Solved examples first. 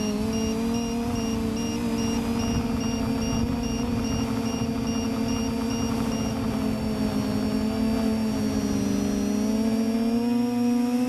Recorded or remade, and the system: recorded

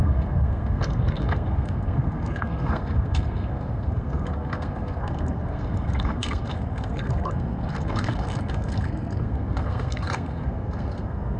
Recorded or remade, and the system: remade, codec, SNAC